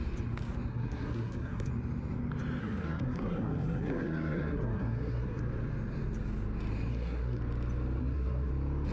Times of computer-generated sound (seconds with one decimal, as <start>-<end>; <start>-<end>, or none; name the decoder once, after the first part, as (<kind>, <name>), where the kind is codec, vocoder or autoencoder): 0.7-1.7 (codec, SNAC); 2.6-5.4; 6.9-7.4; 8.0-8.5